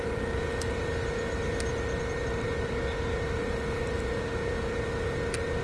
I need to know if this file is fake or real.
real